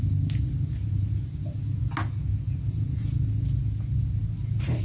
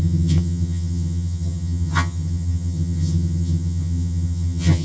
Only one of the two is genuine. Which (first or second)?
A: first